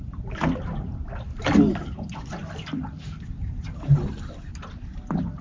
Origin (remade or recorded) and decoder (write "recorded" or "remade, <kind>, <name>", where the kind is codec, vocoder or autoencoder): recorded